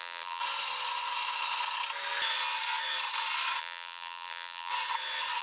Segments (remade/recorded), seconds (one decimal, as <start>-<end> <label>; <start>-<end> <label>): 0.0-0.4 remade; 0.4-3.6 recorded; 3.6-4.7 remade; 4.7-5.4 recorded

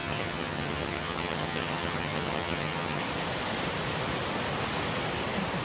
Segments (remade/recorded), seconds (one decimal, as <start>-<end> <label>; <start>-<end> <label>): 0.0-3.0 remade; 3.0-5.6 recorded